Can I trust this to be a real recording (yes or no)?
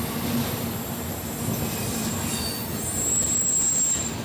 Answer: yes